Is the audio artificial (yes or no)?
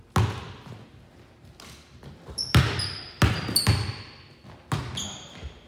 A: no